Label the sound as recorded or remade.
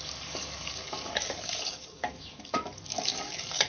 remade